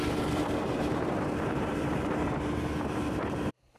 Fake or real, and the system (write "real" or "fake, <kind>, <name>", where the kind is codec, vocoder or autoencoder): fake, vocoder, BigVGAN v2